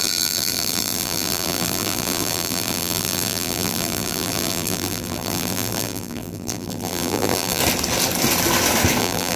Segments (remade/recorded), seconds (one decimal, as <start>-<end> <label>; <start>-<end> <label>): 0.0-7.6 remade; 7.6-9.0 recorded; 9.0-9.4 remade